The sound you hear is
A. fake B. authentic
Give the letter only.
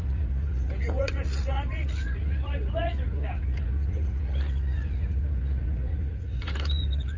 A